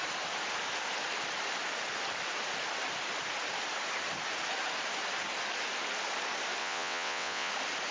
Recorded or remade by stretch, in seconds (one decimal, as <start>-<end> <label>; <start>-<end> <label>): 0.0-6.6 recorded; 6.6-7.5 remade; 7.5-7.9 recorded

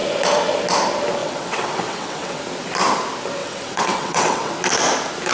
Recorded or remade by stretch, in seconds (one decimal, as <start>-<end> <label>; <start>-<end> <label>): 0.0-1.2 recorded; 1.2-2.4 remade; 2.4-3.4 recorded; 3.4-4.5 remade; 4.5-5.3 recorded

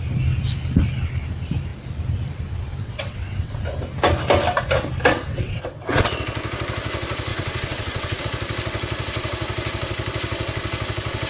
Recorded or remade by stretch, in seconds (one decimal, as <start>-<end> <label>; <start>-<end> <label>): 0.0-2.8 recorded; 2.8-3.6 remade; 3.6-5.3 recorded; 5.3-6.1 remade; 6.1-7.3 recorded; 7.3-8.2 remade; 8.2-11.3 recorded

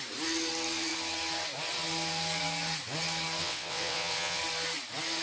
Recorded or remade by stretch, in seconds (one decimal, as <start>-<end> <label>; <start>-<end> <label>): 0.0-3.4 recorded; 3.4-4.4 remade; 4.4-5.2 recorded